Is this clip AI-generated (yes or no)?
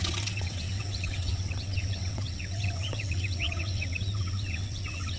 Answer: yes